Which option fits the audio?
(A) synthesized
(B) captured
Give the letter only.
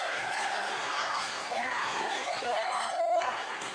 A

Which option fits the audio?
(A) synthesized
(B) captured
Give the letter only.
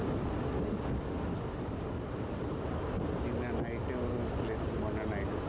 B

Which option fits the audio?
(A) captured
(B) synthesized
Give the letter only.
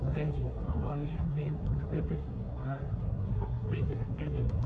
B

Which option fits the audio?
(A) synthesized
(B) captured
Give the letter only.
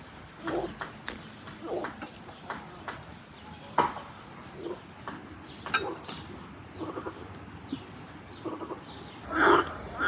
B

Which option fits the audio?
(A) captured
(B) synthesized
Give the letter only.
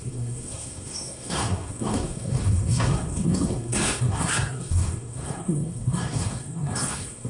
B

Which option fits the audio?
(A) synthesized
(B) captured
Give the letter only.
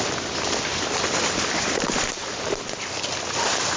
B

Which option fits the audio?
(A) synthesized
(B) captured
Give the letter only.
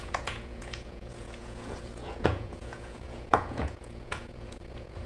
A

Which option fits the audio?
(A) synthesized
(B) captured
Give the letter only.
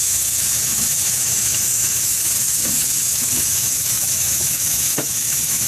A